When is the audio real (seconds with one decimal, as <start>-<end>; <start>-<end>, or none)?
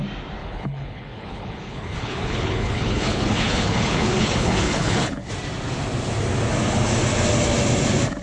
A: 0.0-0.4; 5.3-8.2